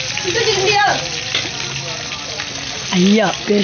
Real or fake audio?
real